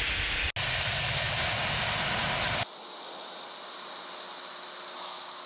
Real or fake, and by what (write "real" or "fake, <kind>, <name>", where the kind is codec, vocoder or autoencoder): real